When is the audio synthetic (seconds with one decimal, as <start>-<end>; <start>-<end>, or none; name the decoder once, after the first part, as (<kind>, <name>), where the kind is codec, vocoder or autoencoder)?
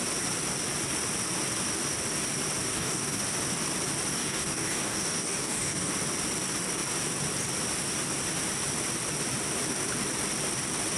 2.7-3.2 (codec, DAC); 4.1-5.9